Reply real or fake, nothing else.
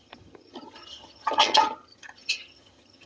fake